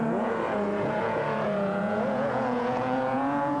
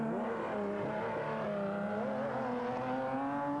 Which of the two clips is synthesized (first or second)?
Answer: first